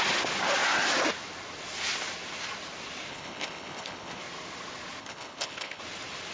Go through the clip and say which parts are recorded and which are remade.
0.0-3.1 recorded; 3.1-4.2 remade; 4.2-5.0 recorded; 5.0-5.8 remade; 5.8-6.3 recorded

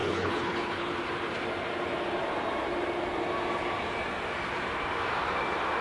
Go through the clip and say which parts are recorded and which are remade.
0.0-0.9 remade; 0.9-5.8 recorded